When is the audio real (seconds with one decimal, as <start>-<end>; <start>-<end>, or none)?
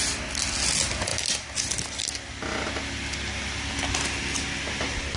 0.0-5.2